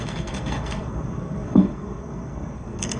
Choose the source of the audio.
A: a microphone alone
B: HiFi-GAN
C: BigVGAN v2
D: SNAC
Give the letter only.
D